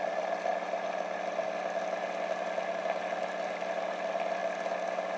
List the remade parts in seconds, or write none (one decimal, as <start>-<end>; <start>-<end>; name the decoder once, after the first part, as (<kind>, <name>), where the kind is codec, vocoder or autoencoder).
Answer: none